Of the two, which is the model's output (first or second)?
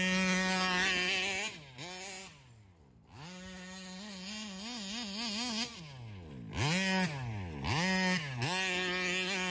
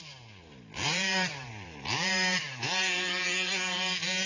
second